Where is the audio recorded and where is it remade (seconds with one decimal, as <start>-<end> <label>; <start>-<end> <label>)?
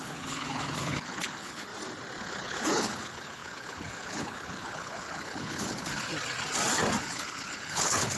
0.0-1.7 remade; 1.7-2.2 recorded; 2.2-6.1 remade; 6.1-7.0 recorded; 7.0-8.2 remade